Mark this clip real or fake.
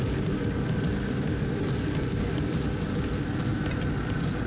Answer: real